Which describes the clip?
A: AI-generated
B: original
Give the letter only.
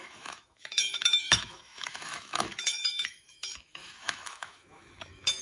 A